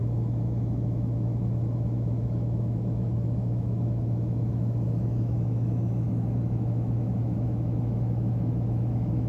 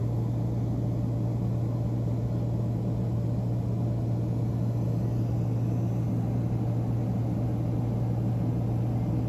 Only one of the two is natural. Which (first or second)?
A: second